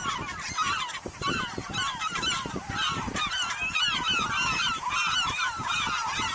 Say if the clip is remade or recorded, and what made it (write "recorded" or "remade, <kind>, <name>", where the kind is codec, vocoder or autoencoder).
remade, vocoder, BigVGAN v2